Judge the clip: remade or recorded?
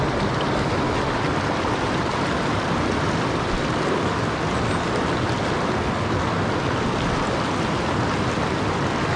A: recorded